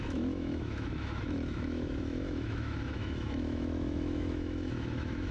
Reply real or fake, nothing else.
fake